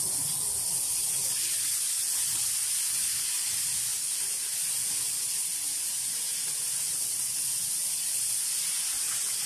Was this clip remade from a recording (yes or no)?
no